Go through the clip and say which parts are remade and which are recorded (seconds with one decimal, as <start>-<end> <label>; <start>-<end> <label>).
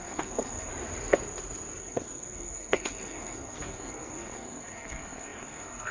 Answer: 0.0-0.7 remade; 0.7-1.8 recorded; 1.8-5.9 remade